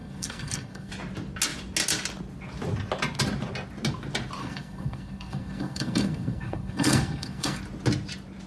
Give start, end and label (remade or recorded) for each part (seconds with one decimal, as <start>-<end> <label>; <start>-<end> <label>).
0.0-0.9 remade; 0.9-4.4 recorded; 4.4-7.6 remade; 7.6-8.5 recorded

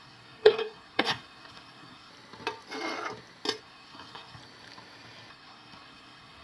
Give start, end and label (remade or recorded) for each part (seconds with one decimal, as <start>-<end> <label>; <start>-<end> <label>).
0.0-2.1 remade; 2.1-3.6 recorded; 3.6-4.4 remade; 4.4-5.3 recorded; 5.3-6.4 remade

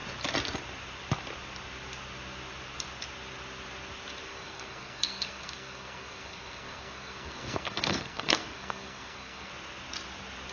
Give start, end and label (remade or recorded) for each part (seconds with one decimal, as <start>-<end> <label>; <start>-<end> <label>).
0.0-4.3 recorded; 4.3-9.5 remade; 9.5-10.5 recorded

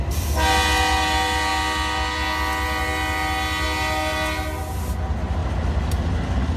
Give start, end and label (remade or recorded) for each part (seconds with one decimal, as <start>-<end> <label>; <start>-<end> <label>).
0.0-6.6 recorded

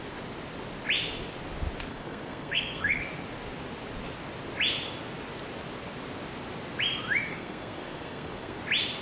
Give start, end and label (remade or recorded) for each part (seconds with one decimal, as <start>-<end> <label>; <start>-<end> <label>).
0.0-1.9 recorded; 1.9-3.0 remade; 3.0-7.3 recorded; 7.3-8.6 remade; 8.6-9.0 recorded

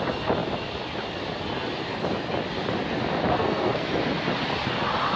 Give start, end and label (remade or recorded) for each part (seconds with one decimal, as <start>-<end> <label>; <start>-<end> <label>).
0.0-3.3 recorded; 3.3-3.9 remade; 3.9-5.2 recorded

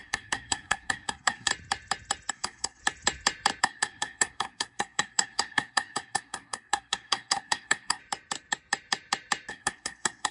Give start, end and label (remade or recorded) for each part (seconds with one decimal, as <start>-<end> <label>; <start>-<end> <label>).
0.0-1.5 remade; 1.5-2.3 recorded; 2.3-2.8 remade; 2.8-3.6 recorded; 3.6-8.0 remade; 8.0-9.5 recorded; 9.5-10.3 remade

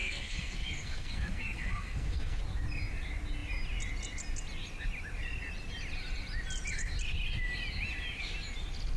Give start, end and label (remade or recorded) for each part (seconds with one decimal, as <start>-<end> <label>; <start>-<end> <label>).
0.0-2.4 remade; 2.4-9.0 recorded